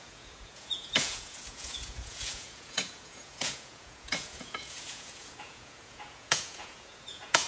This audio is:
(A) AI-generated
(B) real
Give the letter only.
A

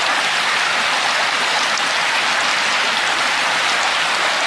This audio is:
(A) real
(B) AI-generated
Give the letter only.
A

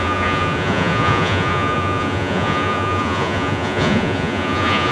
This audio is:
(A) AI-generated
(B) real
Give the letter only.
A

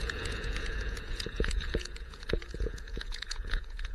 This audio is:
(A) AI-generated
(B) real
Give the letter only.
A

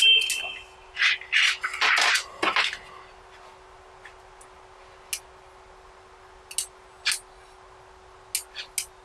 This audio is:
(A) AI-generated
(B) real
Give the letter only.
B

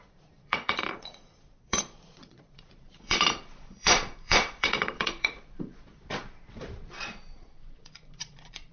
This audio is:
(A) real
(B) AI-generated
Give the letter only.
B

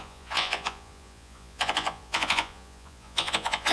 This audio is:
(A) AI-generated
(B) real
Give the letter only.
A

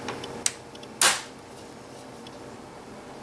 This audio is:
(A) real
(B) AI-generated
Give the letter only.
A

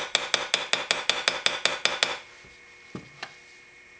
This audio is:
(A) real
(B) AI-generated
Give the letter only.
A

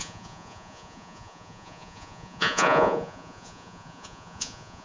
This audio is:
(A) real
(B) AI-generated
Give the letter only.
B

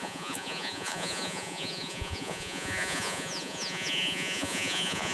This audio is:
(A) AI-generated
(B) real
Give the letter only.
A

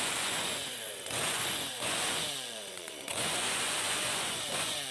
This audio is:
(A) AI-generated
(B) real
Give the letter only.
A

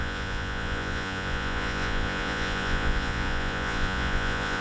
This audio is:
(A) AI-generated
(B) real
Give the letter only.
A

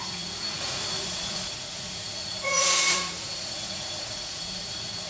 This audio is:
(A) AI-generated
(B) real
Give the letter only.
A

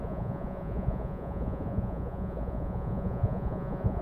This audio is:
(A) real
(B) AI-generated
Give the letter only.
B